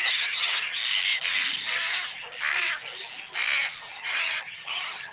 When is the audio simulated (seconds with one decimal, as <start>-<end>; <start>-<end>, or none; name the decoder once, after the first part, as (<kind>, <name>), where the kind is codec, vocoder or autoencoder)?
0.0-0.8 (vocoder, HiFi-GAN); 3.9-5.1